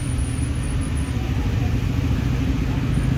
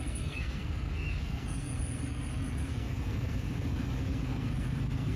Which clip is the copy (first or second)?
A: second